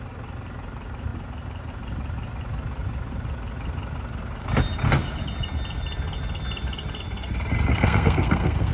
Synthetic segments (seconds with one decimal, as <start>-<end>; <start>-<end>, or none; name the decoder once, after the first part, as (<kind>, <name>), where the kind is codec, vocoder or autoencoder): 7.7-8.7 (codec, SNAC)